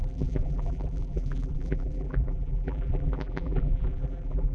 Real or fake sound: fake